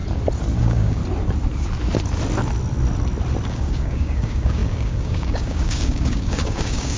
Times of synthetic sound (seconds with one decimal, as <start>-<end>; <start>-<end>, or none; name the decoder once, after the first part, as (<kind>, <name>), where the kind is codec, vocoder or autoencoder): 0.6-1.0 (codec, DAC); 3.5-7.0